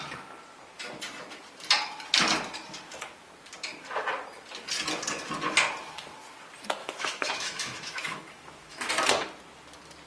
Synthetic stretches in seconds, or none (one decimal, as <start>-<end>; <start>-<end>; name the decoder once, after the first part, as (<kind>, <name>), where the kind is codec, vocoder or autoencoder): 6.8-8.9 (autoencoder, DAC-VAE)